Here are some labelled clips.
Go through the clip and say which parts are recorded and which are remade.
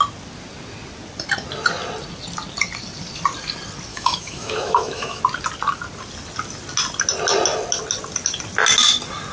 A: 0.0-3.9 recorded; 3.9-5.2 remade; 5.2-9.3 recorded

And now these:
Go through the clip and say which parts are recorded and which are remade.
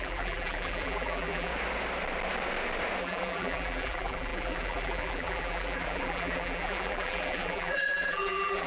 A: 0.0-1.5 remade; 1.5-3.0 recorded; 3.0-8.7 remade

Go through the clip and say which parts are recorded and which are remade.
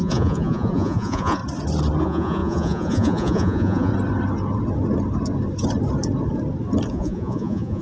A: 0.0-1.4 remade; 1.4-2.0 recorded; 2.0-3.9 remade; 3.9-6.9 recorded; 6.9-7.8 remade